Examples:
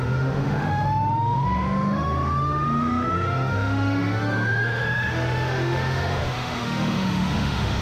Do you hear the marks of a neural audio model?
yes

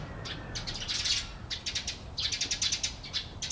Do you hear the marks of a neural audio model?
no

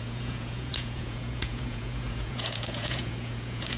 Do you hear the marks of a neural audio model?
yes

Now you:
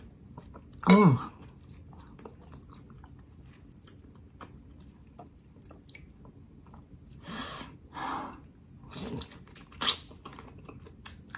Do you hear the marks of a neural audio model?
no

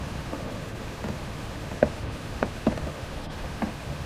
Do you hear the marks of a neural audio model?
yes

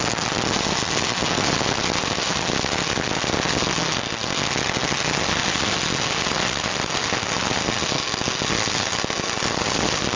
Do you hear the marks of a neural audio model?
no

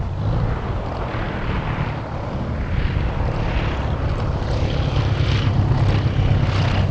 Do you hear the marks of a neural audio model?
no